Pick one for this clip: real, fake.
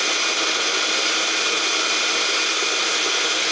real